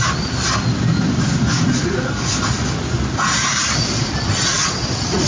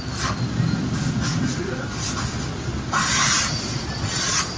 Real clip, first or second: second